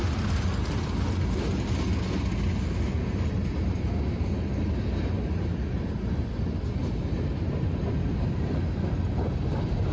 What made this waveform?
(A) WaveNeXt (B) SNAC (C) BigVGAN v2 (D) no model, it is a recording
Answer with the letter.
D